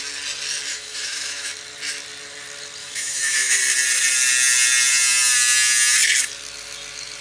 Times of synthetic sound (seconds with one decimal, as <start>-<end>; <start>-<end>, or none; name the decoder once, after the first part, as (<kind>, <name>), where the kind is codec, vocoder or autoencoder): 0.7-1.5 (autoencoder, DAC-VAE); 2.8-3.6